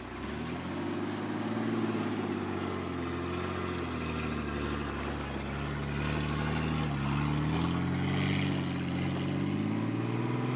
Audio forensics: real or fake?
real